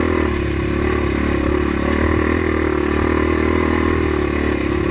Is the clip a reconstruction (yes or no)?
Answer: no